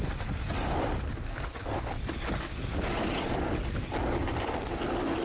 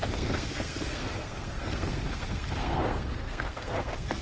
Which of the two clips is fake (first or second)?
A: second